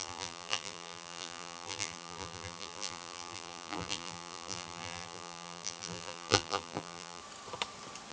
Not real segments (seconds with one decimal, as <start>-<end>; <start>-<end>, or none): 0.0-7.2